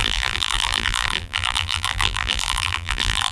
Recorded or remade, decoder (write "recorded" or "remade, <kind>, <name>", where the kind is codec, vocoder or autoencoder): remade, vocoder, BigVGAN v2